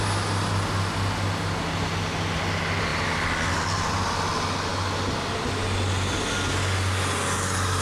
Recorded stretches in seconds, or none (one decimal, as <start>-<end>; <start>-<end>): 0.0-7.8

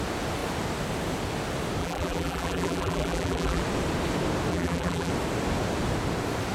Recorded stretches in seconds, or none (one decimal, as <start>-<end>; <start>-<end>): 0.0-1.8; 3.6-4.5; 5.1-6.5

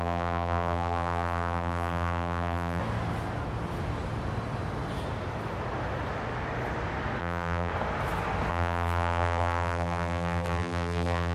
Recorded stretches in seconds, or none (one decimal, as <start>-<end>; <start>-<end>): 2.8-7.2; 7.7-8.5

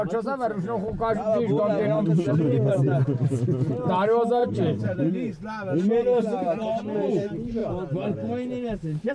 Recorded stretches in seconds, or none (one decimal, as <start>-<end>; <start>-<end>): 0.0-4.4; 5.1-9.1